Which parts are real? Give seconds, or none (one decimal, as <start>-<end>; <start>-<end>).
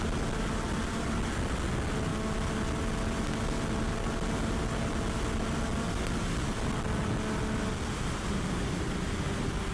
0.0-9.7